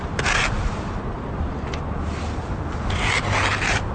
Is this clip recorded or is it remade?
recorded